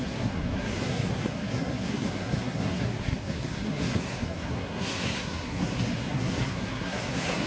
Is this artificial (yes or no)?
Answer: yes